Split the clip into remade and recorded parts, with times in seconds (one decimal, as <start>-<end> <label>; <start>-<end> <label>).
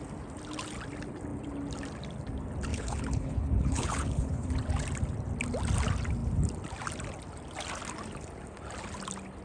0.0-2.7 recorded; 2.7-4.5 remade; 4.5-9.4 recorded